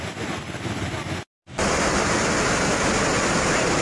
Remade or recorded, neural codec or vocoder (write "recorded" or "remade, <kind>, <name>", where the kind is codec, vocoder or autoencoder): recorded